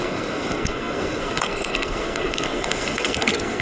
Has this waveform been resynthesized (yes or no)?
yes